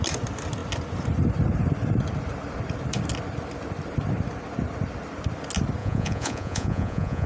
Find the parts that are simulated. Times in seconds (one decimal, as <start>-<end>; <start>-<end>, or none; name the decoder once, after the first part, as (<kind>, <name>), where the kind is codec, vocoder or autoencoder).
5.8-7.3 (vocoder, Vocos)